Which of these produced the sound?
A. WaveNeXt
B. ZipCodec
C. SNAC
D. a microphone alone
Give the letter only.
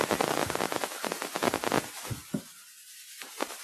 D